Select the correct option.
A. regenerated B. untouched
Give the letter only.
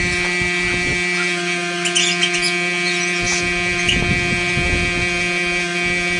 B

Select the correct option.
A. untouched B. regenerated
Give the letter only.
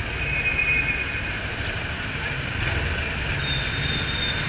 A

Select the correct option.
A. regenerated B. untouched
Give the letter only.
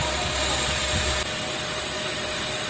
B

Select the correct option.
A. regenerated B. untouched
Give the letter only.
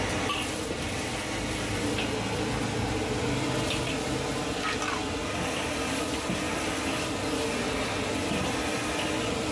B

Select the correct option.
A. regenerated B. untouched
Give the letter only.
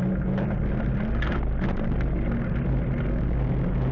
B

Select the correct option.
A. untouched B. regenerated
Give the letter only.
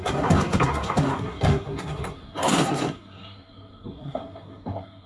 B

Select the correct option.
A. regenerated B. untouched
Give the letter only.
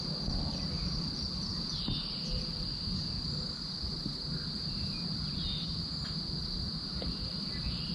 B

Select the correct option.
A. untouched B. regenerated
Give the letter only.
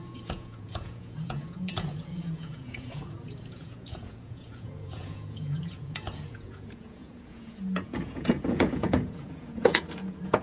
B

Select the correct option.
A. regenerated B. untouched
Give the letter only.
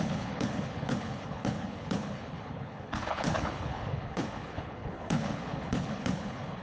A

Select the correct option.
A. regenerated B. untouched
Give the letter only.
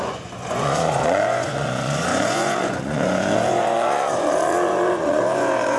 A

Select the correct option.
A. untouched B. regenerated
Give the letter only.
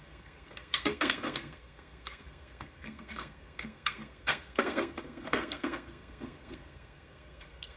B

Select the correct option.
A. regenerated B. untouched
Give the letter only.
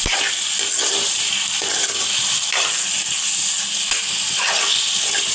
B